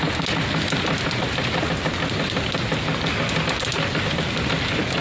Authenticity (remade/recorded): recorded